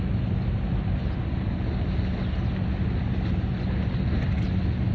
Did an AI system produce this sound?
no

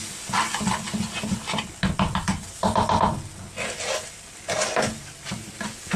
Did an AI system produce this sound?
no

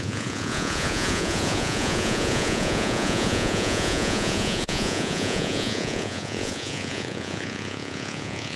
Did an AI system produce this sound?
yes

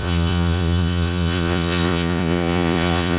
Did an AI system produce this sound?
yes